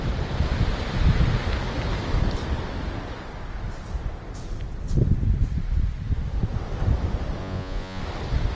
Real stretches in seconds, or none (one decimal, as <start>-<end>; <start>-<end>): 0.0-7.4; 8.0-8.6